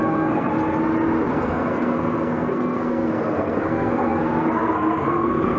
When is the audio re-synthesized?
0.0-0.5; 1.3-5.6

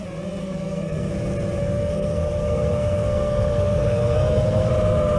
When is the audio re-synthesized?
0.4-1.1; 1.6-4.7

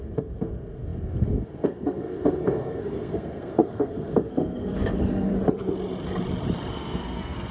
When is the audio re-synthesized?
0.0-5.3; 6.7-7.5

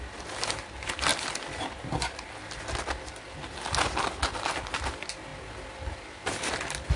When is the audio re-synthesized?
none